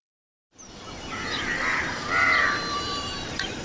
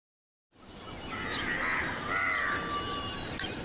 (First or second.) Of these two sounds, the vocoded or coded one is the first